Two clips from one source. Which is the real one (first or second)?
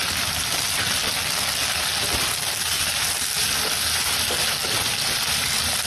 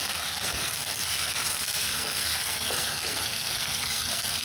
first